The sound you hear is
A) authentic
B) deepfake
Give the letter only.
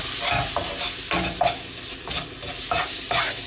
A